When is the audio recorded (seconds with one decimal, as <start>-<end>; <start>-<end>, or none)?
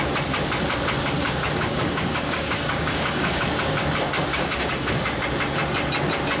0.0-1.2; 3.4-4.3; 5.2-6.4